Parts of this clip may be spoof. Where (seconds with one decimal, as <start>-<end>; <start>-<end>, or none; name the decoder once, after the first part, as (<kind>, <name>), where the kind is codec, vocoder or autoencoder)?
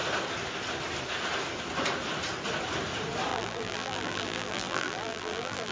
3.3-5.7 (vocoder, BigVGAN v2)